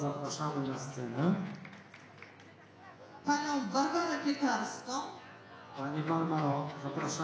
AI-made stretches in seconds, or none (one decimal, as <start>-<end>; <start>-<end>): 0.0-1.5; 2.7-7.2